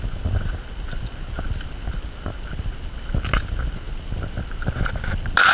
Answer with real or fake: real